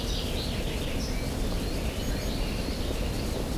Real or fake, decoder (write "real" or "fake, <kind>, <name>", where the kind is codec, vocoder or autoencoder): real